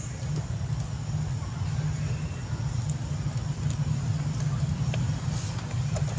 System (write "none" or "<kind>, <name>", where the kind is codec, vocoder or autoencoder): none